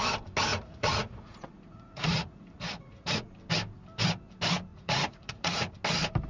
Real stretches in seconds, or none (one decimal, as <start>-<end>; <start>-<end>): 0.0-0.5; 3.3-4.7; 5.7-6.3